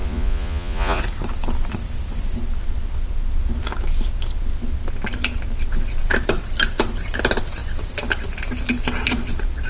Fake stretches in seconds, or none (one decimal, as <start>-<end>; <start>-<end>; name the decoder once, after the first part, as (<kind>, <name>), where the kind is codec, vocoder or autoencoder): 0.0-1.0 (vocoder, Vocos)

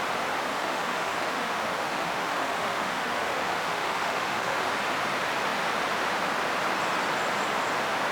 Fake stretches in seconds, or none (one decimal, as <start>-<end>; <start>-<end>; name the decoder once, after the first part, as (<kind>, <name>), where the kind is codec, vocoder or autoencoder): 0.5-4.8 (autoencoder, DAC-VAE)

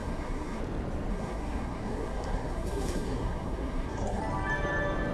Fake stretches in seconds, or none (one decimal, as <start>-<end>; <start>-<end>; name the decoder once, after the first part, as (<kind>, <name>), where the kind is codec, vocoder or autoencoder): 0.0-0.6 (codec, SNAC); 1.1-4.2

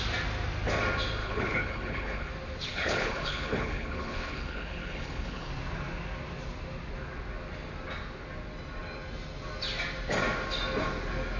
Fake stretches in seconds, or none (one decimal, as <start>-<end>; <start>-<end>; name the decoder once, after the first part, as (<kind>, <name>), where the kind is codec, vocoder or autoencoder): 1.2-2.3 (codec, HILCodec); 2.7-5.5